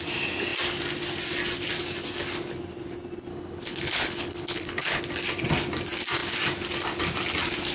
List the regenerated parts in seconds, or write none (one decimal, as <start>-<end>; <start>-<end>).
3.3-5.0